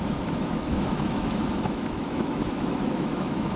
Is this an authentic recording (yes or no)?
no